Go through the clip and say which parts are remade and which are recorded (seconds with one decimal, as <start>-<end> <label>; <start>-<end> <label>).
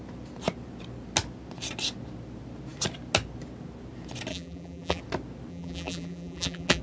0.0-4.3 recorded; 4.3-5.0 remade; 5.0-5.5 recorded; 5.5-6.8 remade